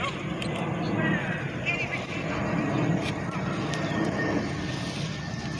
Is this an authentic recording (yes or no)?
yes